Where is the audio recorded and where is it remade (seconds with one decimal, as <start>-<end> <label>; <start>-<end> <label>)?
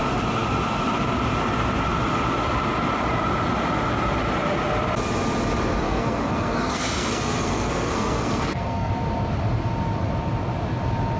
0.0-5.8 recorded; 5.8-8.9 remade; 8.9-11.2 recorded